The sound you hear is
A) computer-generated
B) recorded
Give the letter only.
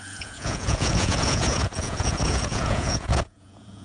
A